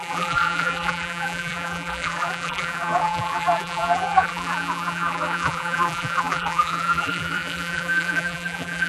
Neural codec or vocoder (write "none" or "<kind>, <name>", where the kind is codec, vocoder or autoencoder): vocoder, BigVGAN v2